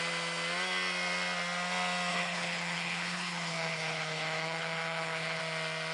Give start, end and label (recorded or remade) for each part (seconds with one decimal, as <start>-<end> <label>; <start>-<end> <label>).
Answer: 0.0-2.1 recorded; 2.1-5.4 remade; 5.4-5.9 recorded